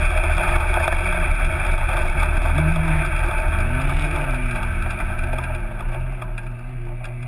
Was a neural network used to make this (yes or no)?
no